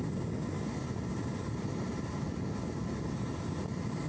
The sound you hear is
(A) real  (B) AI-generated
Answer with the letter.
A